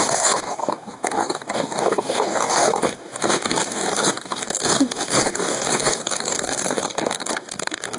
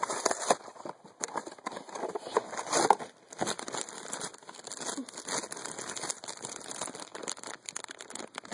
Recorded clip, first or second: second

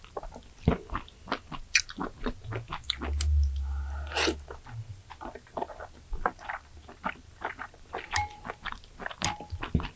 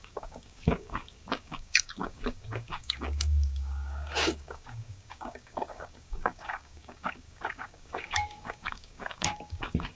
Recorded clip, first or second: first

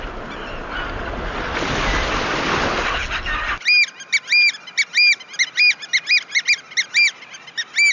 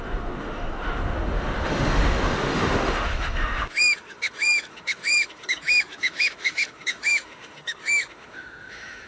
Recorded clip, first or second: first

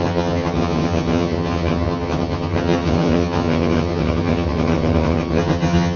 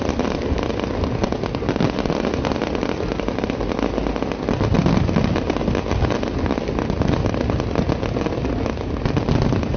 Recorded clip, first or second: second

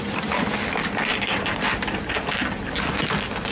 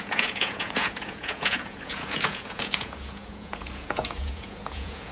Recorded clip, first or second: first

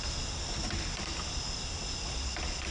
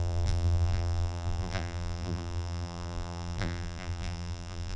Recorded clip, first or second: first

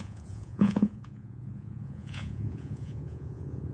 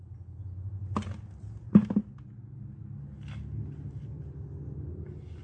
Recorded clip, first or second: second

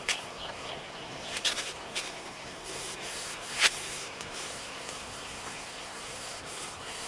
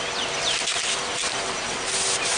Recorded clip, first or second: second